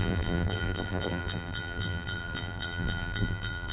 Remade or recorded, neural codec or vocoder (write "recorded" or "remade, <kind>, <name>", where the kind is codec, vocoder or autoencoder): remade, vocoder, BigVGAN v2